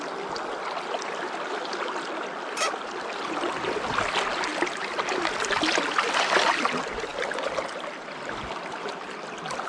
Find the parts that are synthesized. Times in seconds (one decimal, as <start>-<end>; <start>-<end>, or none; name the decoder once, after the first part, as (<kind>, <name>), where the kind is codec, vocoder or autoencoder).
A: none